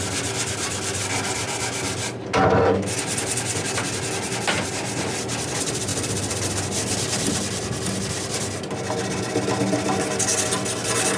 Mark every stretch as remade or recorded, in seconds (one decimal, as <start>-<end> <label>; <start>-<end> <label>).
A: 0.0-11.2 recorded